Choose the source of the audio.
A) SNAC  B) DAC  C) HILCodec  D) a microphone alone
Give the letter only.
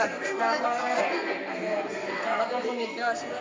A